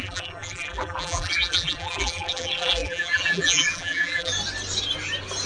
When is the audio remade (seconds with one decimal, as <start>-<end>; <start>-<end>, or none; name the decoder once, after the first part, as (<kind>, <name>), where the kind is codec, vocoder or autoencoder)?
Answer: 0.0-4.3 (vocoder, BigVGAN v2)

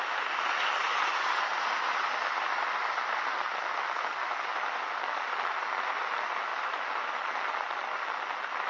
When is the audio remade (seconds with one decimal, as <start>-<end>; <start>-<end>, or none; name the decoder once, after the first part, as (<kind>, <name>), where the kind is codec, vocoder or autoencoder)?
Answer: none

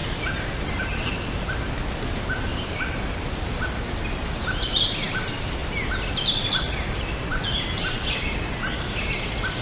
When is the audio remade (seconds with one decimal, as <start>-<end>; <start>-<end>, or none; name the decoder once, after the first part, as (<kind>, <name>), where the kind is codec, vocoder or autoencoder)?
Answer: none

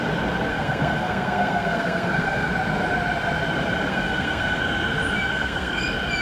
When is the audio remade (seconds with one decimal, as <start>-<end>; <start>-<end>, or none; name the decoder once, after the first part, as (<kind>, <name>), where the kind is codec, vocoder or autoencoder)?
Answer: 0.5-2.5 (codec, SNAC); 3.9-4.6; 5.3-5.8

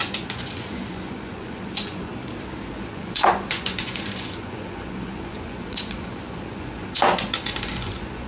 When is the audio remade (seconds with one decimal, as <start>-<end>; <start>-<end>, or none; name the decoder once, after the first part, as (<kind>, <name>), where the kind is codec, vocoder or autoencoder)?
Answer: 0.0-2.1 (vocoder, Vocos); 2.7-8.3

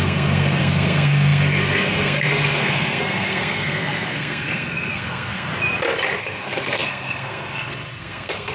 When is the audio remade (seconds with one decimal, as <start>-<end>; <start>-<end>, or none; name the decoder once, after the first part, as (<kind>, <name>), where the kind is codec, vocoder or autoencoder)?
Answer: 0.0-5.5 (codec, SNAC); 6.2-8.5

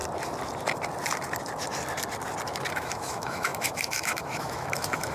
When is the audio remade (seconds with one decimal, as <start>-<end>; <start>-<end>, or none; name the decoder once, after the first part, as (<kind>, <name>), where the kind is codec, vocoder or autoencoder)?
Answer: 2.7-5.1 (autoencoder, DAC-VAE)